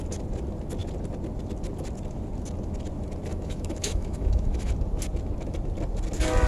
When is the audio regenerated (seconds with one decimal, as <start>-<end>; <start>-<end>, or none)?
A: 3.3-4.7